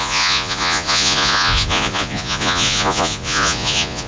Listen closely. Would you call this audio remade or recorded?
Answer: remade